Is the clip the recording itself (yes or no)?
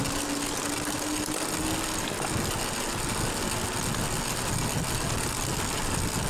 yes